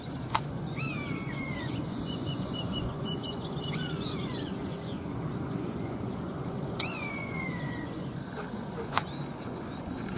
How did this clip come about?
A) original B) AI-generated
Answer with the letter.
B